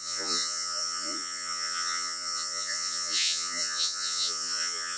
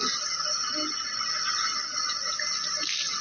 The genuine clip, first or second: second